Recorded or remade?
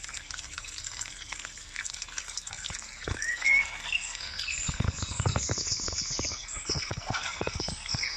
remade